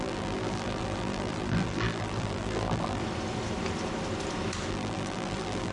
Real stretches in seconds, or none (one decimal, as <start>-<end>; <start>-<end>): 3.0-4.7